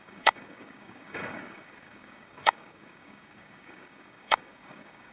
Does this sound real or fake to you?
fake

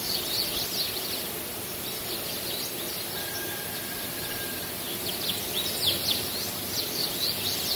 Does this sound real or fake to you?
real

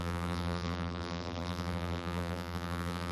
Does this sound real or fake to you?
fake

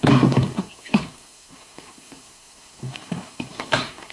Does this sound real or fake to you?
fake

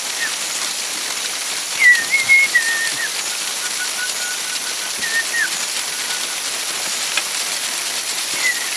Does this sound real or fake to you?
real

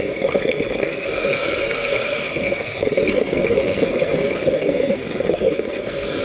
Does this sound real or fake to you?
fake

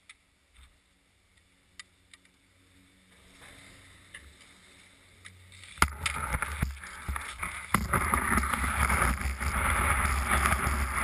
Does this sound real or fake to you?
real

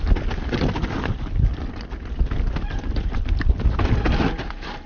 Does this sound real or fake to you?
real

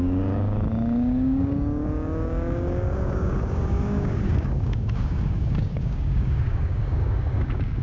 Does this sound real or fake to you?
fake